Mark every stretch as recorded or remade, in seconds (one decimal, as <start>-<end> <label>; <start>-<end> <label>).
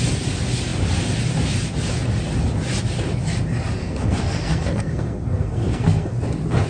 0.0-3.8 recorded; 3.8-6.2 remade; 6.2-6.7 recorded